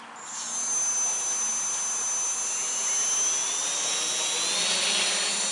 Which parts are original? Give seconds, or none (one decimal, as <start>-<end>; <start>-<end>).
0.0-5.5